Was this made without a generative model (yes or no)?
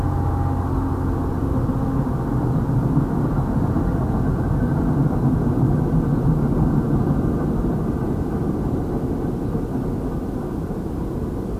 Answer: yes